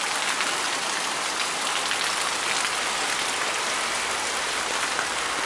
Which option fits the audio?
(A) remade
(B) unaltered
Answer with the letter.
B